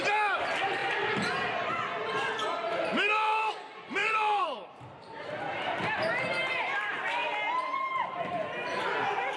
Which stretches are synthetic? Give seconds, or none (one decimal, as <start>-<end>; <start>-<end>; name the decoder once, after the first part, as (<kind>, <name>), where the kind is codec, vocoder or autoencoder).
4.0-5.3 (vocoder, BigVGAN v2)